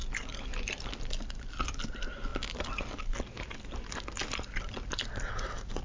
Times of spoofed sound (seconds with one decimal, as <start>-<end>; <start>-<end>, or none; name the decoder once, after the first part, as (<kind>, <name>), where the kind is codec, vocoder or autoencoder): none